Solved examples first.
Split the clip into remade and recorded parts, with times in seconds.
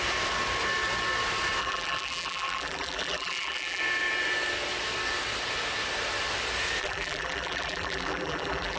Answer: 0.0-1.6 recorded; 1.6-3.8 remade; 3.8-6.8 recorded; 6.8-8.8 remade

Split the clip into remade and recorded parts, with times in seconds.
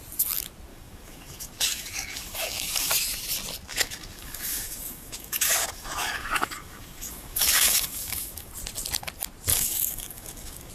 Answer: 0.0-0.7 recorded; 0.7-2.9 remade; 2.9-3.7 recorded; 3.7-8.5 remade; 8.5-9.5 recorded; 9.5-10.7 remade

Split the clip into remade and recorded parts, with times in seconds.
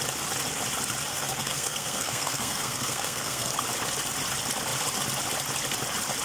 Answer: 0.0-1.1 recorded; 1.1-3.5 remade; 3.5-6.2 recorded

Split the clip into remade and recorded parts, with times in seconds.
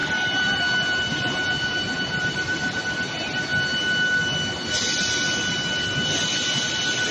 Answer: 0.0-2.8 remade; 2.8-7.1 recorded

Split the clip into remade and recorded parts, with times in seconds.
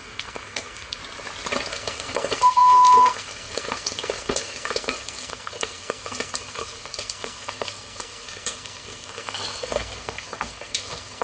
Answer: 0.0-1.0 remade; 1.0-1.7 recorded; 1.7-11.2 remade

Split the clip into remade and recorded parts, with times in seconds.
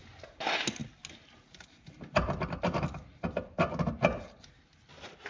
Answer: 0.0-5.3 recorded